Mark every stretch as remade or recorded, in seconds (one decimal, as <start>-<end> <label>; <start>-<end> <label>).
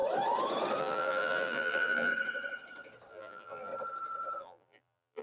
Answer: 0.0-0.8 recorded; 0.8-2.1 remade; 2.1-3.1 recorded; 3.1-3.7 remade; 3.7-4.4 recorded; 4.4-5.2 remade